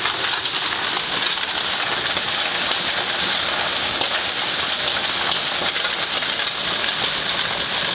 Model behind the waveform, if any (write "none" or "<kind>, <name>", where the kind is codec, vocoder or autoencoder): none